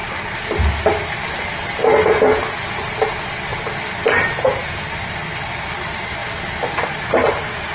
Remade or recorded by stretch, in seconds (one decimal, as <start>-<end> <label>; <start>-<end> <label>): 0.0-2.7 remade; 2.7-7.7 recorded